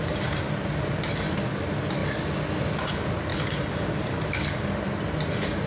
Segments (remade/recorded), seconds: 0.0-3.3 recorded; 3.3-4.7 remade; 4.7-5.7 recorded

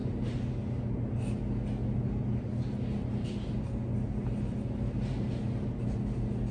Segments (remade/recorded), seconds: 0.0-6.5 recorded